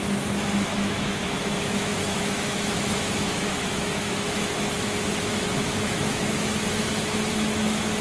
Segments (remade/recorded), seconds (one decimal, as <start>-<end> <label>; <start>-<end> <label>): 0.0-6.8 remade; 6.8-7.3 recorded; 7.3-8.0 remade